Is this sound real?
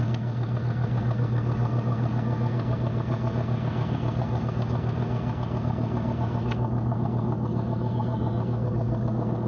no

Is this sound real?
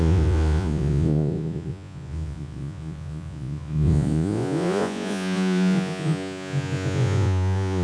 no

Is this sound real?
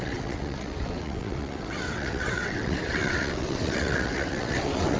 no